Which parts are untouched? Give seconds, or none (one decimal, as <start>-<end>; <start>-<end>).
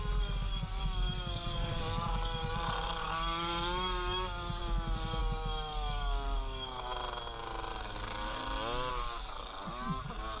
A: 4.6-5.2; 6.9-7.8; 8.4-8.9